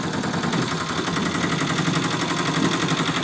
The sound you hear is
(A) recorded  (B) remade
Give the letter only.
A